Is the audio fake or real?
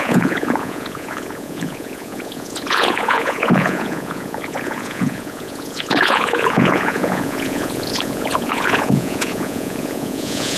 fake